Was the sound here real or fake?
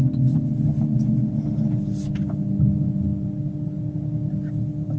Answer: real